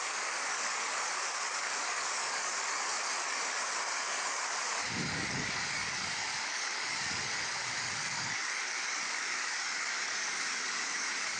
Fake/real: fake